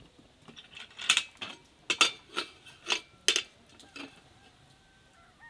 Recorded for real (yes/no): yes